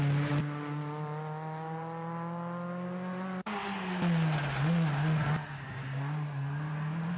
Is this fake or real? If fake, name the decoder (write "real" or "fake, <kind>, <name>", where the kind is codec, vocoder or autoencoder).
real